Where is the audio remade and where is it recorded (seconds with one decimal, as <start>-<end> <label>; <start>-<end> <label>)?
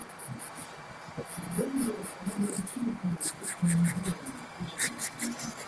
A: 0.0-3.4 recorded; 3.4-5.7 remade